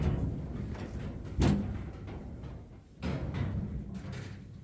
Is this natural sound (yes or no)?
yes